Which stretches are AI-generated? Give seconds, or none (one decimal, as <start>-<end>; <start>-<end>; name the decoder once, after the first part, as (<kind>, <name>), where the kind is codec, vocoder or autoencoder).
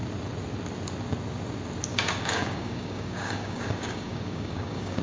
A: 1.9-5.0 (codec, DAC)